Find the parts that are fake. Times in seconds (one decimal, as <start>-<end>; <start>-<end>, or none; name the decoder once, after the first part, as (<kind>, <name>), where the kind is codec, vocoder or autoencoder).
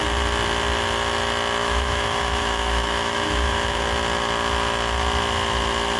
1.6-3.8 (autoencoder, DAC-VAE)